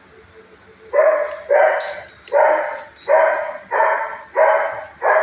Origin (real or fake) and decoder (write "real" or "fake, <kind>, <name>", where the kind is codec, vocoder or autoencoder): real